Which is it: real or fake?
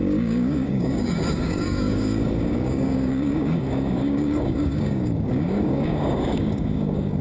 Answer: fake